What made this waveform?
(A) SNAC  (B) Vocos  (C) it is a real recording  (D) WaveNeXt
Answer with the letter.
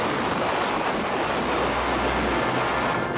C